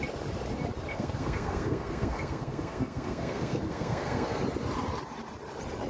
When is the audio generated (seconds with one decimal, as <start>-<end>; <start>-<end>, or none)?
0.9-4.4